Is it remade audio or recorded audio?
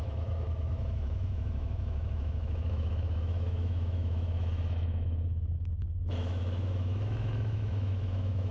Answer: remade